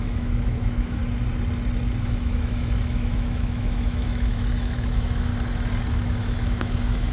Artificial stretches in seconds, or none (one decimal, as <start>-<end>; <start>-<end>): 0.0-1.0; 2.0-5.3; 5.9-7.1